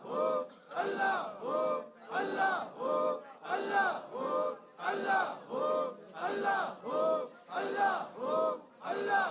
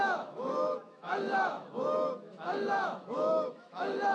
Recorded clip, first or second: first